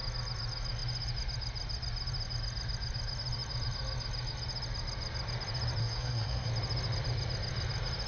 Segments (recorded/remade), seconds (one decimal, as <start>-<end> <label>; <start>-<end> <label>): 0.0-5.8 recorded; 5.8-6.5 remade; 6.5-8.1 recorded